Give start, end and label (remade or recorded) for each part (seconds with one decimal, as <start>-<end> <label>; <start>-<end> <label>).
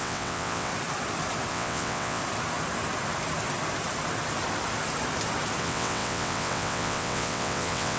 0.0-0.7 remade; 0.7-1.5 recorded; 1.5-2.2 remade; 2.2-5.6 recorded; 5.6-8.0 remade